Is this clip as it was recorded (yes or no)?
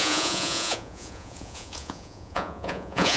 no